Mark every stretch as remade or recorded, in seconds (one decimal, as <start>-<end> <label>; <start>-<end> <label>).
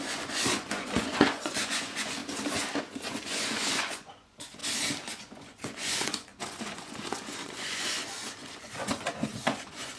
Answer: 0.0-2.2 remade; 2.2-2.8 recorded; 2.8-4.6 remade; 4.6-5.1 recorded; 5.1-10.0 remade